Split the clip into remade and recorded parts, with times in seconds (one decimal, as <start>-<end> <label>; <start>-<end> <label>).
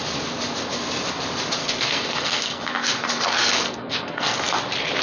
0.0-1.6 recorded; 1.6-4.4 remade; 4.4-5.0 recorded